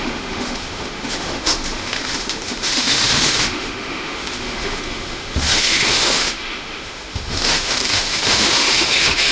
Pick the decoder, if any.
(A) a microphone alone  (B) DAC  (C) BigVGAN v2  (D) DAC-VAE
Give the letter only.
D